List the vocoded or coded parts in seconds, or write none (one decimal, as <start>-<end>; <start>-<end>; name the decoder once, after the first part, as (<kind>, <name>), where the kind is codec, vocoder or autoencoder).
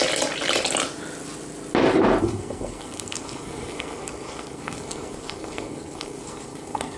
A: 2.2-7.0 (codec, SNAC)